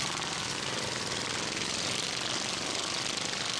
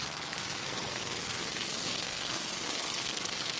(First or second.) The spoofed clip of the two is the second